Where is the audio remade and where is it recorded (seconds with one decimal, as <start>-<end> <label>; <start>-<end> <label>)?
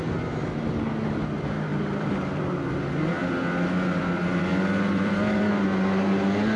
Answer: 0.0-1.7 recorded; 1.7-2.7 remade; 2.7-4.5 recorded; 4.5-5.5 remade; 5.5-6.6 recorded